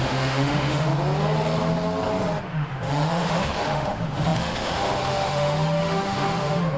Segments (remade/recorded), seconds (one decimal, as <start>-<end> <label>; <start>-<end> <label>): 0.0-0.9 remade; 0.9-2.4 recorded; 2.4-6.8 remade